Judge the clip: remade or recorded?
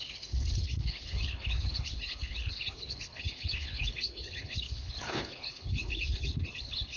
remade